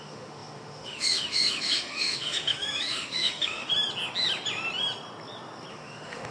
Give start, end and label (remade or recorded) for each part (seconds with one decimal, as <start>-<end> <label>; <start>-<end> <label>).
0.0-3.7 remade; 3.7-5.7 recorded; 5.7-6.3 remade